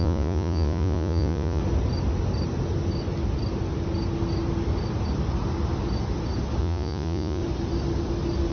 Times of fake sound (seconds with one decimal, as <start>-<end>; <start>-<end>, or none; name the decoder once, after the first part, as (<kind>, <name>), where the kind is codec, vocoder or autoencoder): 0.0-1.6 (vocoder, Vocos); 6.6-7.4

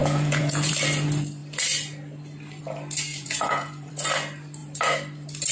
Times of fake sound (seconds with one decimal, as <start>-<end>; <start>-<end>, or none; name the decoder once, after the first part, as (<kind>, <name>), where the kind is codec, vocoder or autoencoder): 0.0-0.7 (vocoder, Vocos); 3.1-3.9

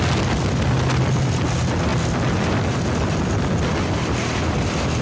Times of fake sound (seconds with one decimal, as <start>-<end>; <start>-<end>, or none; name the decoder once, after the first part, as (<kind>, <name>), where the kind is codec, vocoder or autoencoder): none